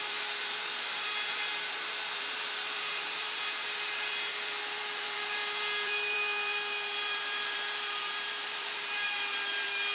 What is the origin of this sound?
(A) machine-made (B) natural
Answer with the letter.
A